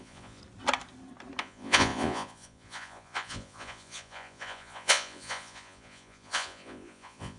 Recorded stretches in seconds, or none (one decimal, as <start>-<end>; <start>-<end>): 0.4-1.4